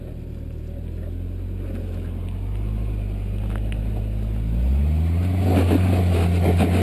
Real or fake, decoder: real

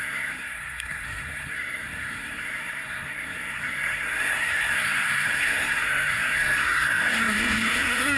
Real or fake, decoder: fake, codec, SNAC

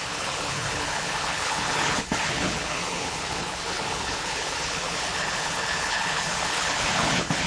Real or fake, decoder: fake, codec, HILCodec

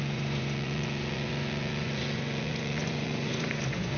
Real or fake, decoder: fake, vocoder, Vocos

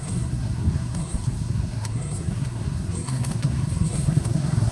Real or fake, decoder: fake, codec, SNAC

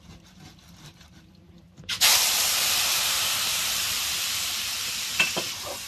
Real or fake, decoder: fake, vocoder, BigVGAN v2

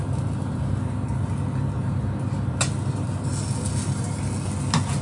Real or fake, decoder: real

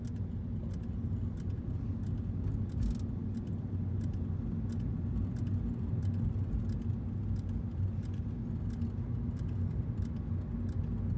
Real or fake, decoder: real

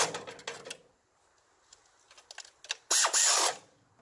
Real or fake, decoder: real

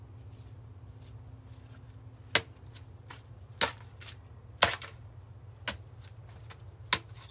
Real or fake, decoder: real